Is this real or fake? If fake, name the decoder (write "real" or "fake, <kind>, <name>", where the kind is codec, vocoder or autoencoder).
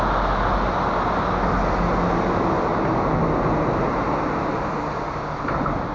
real